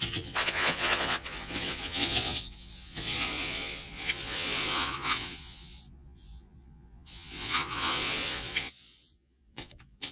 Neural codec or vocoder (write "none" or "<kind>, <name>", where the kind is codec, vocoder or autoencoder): vocoder, Vocos